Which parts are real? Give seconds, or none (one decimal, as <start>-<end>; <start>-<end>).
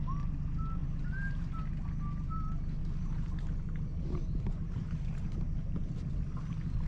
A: 0.0-0.8; 1.6-2.8; 6.1-6.9